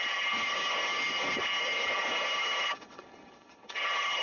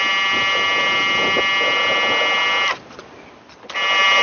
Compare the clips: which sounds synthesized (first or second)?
first